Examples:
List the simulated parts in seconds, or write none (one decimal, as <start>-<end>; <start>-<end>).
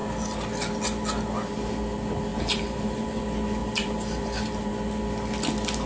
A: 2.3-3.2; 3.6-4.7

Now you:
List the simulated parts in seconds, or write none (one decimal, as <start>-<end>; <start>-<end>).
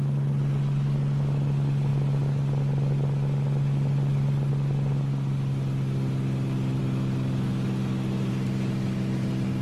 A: none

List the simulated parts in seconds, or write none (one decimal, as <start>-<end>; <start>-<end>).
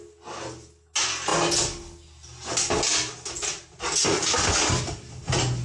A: none